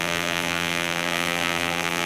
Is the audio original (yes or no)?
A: no